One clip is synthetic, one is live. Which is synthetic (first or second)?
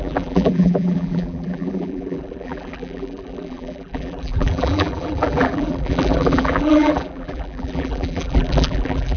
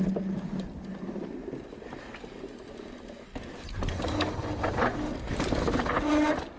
first